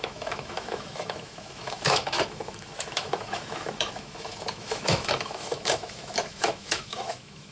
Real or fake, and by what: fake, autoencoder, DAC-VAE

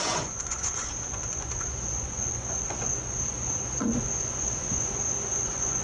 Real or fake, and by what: fake, vocoder, Vocos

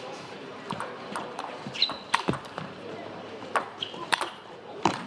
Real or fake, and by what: fake, vocoder, BigVGAN v2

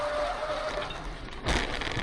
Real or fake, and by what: real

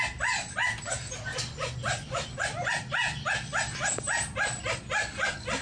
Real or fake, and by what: real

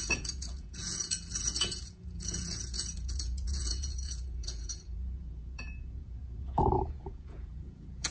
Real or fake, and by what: fake, vocoder, Vocos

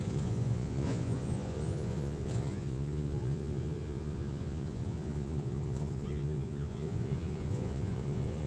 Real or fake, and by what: fake, vocoder, Vocos